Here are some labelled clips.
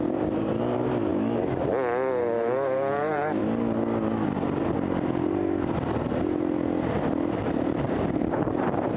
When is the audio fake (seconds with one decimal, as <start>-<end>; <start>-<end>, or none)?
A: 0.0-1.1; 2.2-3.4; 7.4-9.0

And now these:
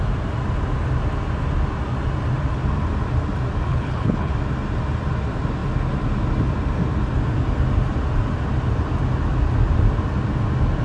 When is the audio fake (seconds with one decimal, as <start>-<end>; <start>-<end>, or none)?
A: 3.7-4.3

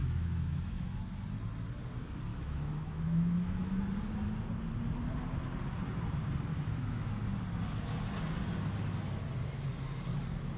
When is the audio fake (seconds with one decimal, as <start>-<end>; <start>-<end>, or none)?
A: 0.0-1.0; 2.3-3.8; 6.5-7.1

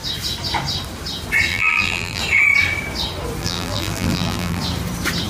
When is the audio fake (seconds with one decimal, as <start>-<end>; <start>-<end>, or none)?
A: 1.5-2.2; 3.4-4.6

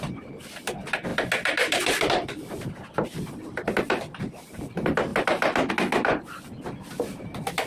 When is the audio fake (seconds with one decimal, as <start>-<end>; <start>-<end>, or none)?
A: none

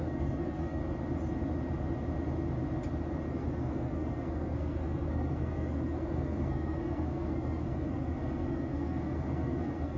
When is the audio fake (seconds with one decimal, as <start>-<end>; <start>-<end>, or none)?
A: 0.0-0.8; 3.3-10.0